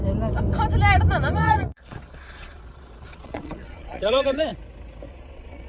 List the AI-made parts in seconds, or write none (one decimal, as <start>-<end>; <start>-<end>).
1.3-4.5; 5.1-5.7